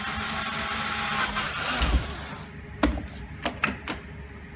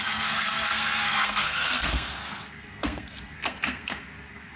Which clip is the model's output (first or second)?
second